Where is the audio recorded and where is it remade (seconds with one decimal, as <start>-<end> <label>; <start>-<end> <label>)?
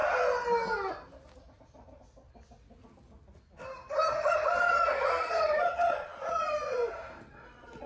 0.0-4.7 recorded; 4.7-6.8 remade; 6.8-7.3 recorded; 7.3-7.9 remade